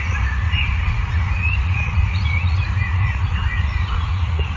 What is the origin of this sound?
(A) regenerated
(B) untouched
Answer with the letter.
A